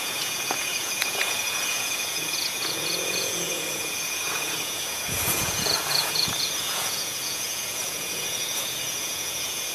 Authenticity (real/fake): fake